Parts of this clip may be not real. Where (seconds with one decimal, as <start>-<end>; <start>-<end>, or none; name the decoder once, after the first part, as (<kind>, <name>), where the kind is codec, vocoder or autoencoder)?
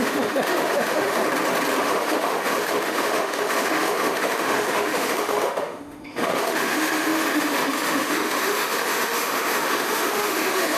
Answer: 0.0-1.2 (autoencoder, DAC-VAE); 1.8-10.8